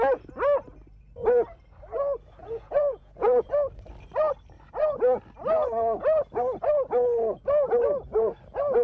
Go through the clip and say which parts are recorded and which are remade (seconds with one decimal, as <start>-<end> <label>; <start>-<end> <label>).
0.0-2.4 recorded; 2.4-3.5 remade; 3.5-8.8 recorded